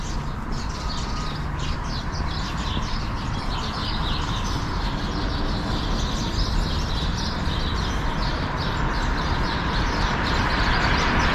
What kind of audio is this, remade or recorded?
recorded